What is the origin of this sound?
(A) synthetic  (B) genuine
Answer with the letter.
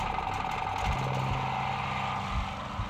B